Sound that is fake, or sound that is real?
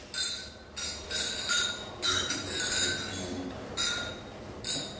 real